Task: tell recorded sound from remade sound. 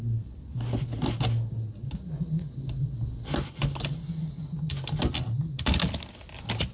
recorded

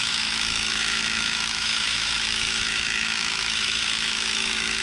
remade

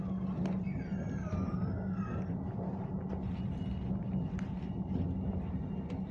recorded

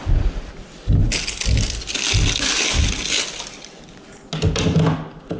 recorded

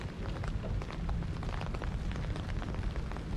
recorded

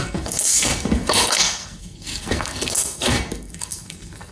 remade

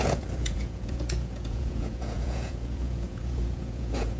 remade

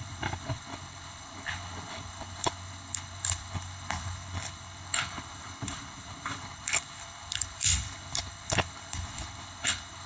remade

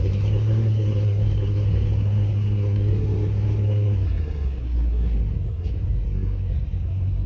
remade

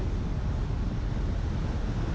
recorded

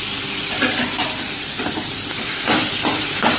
remade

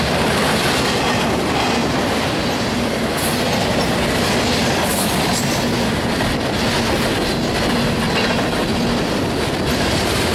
recorded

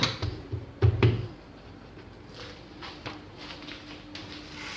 recorded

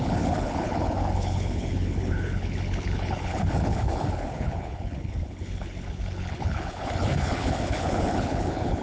remade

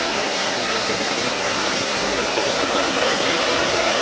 remade